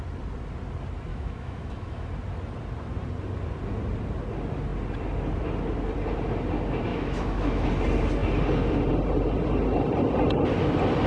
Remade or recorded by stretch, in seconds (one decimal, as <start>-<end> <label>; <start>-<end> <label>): 0.0-1.1 recorded; 1.1-2.1 remade; 2.1-6.9 recorded; 6.9-7.7 remade; 7.7-11.1 recorded